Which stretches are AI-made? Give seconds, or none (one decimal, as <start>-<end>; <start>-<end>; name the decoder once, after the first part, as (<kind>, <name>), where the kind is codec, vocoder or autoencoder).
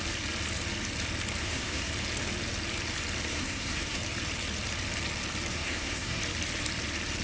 1.4-1.9 (codec, SNAC); 3.3-4.0; 5.5-6.2